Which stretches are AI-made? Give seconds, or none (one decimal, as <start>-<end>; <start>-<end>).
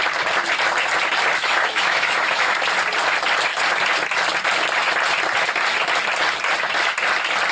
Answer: 1.4-2.6